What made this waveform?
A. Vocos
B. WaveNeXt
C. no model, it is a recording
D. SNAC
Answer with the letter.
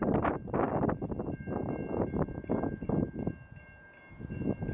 C